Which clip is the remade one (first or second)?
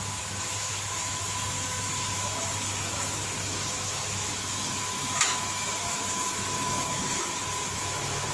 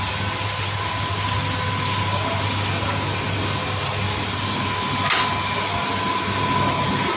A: first